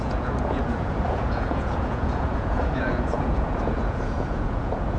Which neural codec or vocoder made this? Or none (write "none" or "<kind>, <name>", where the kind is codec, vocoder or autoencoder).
vocoder, Vocos